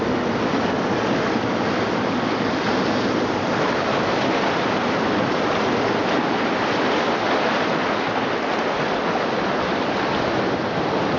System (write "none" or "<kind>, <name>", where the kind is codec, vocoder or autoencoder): none